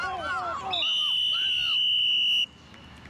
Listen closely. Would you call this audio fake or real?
real